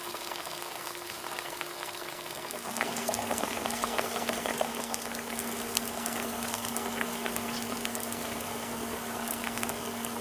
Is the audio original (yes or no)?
no